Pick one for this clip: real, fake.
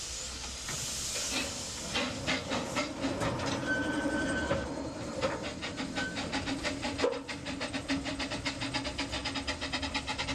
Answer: real